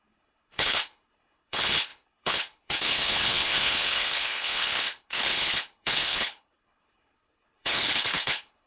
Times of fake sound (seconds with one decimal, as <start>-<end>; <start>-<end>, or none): 0.0-8.7